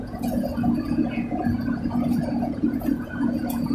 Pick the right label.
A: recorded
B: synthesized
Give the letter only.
B